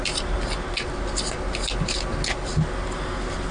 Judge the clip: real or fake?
real